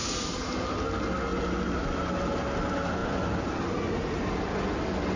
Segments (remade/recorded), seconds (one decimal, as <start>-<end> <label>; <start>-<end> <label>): 0.0-5.2 recorded